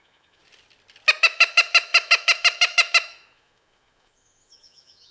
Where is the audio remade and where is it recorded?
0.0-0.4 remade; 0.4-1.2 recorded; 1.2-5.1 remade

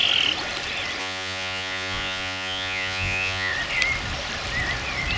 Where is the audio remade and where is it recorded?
0.0-1.0 recorded; 1.0-3.5 remade; 3.5-5.2 recorded

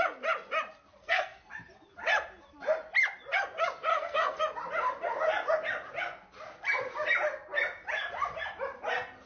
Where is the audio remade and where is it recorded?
0.0-1.0 recorded; 1.0-1.5 remade; 1.5-3.9 recorded; 3.9-4.4 remade; 4.4-9.3 recorded